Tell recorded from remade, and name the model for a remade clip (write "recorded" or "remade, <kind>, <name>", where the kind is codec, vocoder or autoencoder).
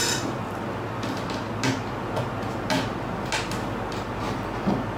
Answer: recorded